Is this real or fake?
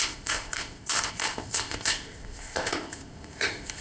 fake